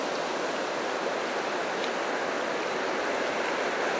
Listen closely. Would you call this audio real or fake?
real